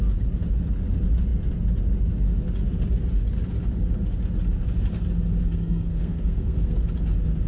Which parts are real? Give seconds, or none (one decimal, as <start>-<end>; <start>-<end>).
0.0-5.4; 6.8-7.5